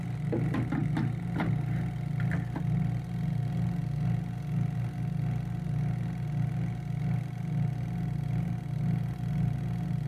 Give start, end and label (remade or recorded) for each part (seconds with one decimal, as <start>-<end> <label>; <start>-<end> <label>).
0.0-10.1 recorded